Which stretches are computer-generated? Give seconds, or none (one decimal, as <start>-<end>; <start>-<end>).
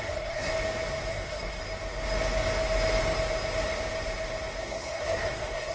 0.0-0.5; 1.1-1.6; 4.6-5.7